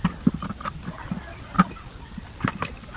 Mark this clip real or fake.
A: real